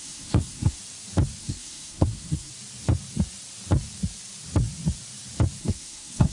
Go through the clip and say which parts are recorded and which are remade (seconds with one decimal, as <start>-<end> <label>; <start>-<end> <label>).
0.0-0.8 remade; 0.8-1.4 recorded; 1.4-2.5 remade; 2.5-5.6 recorded; 5.6-6.3 remade